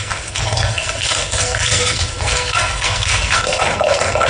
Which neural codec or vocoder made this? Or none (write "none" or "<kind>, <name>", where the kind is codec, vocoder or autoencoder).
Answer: codec, SNAC